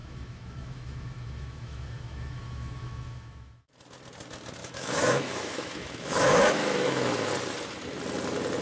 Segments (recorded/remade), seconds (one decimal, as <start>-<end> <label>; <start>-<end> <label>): 0.0-3.7 remade; 3.7-4.6 recorded; 4.6-7.3 remade; 7.3-8.6 recorded